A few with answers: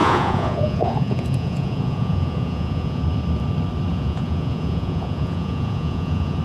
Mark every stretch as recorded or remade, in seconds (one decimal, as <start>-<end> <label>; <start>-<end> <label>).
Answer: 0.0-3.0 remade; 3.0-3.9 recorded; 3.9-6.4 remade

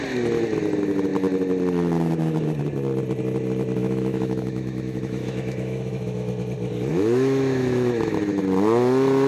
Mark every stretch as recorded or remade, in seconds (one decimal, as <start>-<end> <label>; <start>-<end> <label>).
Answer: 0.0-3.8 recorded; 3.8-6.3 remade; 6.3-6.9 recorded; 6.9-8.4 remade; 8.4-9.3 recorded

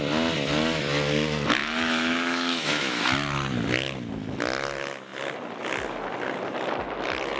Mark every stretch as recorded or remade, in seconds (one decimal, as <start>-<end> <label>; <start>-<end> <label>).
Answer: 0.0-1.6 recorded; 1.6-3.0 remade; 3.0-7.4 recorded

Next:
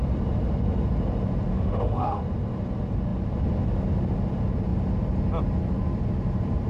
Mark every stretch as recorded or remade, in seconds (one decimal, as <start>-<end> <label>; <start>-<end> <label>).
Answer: 0.0-1.5 recorded; 1.5-2.2 remade; 2.2-6.7 recorded

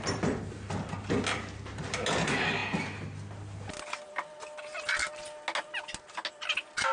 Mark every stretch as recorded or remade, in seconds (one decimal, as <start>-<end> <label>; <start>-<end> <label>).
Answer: 0.0-6.9 recorded